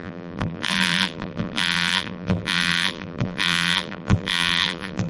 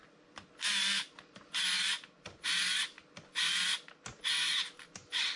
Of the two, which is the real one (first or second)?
second